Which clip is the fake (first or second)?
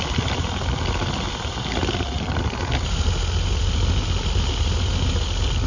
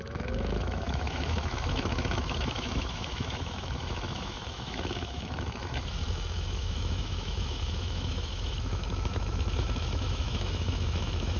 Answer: second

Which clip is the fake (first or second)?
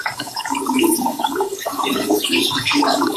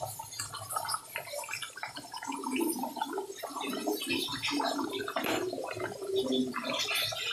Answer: first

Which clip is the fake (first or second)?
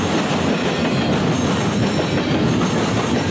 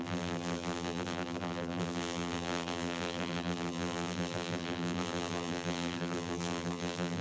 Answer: second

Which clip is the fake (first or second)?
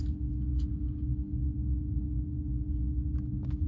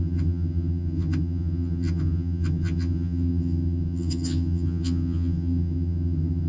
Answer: second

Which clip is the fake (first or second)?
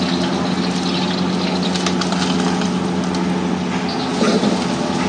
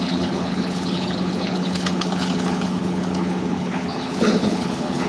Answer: second